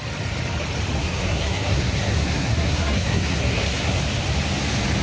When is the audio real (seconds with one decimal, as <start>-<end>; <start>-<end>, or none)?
0.0-1.0; 4.0-5.0

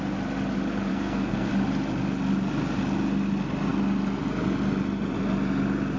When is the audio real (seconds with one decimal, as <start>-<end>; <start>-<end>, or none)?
0.0-0.9; 1.5-6.0

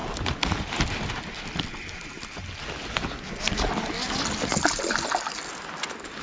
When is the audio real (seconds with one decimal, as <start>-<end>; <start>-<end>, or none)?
0.0-6.2

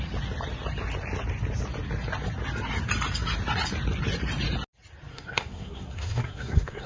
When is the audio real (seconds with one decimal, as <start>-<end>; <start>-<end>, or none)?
0.0-5.1

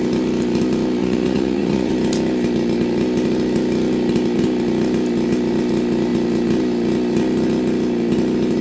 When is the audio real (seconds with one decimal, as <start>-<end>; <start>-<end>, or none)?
0.0-1.0; 1.9-8.6

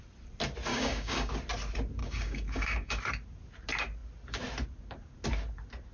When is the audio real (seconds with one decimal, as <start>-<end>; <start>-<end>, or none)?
0.0-0.7; 1.3-2.0; 3.0-5.9

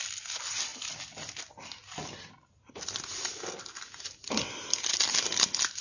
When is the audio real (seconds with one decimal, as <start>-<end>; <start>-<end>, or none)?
0.0-5.8